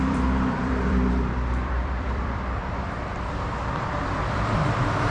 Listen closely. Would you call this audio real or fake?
fake